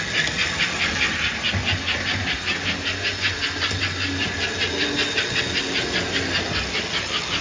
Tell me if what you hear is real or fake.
real